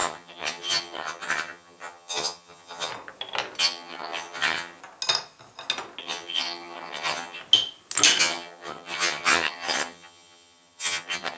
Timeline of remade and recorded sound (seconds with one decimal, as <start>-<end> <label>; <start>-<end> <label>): 0.0-2.9 remade; 2.9-3.6 recorded; 3.6-4.8 remade; 4.8-6.0 recorded; 6.0-7.4 remade; 7.4-8.2 recorded; 8.2-11.4 remade